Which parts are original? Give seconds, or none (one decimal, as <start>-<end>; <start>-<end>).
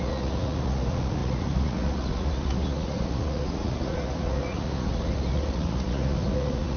none